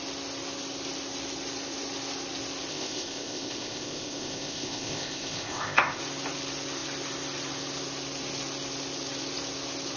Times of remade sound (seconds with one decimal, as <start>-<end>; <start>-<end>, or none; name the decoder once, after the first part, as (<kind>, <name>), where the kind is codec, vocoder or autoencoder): 2.7-6.0 (codec, ZipCodec)